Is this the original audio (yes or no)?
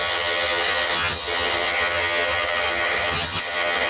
no